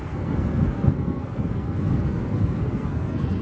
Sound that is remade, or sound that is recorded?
remade